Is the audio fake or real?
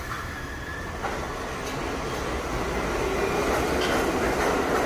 real